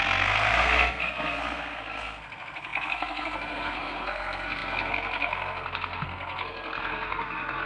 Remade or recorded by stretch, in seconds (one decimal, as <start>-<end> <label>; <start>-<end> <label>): 0.0-7.7 remade